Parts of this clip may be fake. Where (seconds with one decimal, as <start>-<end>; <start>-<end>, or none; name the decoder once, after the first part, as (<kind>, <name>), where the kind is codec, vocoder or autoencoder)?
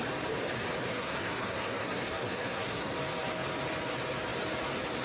0.9-2.9 (codec, SNAC)